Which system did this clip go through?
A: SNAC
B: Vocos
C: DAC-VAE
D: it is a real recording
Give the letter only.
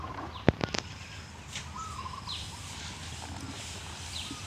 D